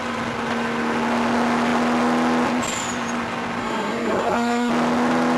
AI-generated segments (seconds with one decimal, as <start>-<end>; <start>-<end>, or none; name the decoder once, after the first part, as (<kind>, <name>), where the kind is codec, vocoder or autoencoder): 3.6-4.7 (codec, SNAC)